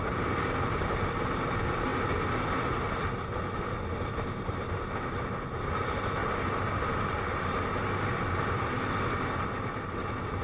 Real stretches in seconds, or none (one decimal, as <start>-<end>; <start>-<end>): 0.0-10.4